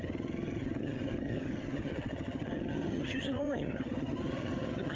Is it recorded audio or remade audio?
remade